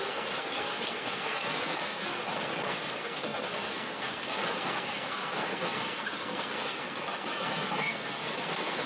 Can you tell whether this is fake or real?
fake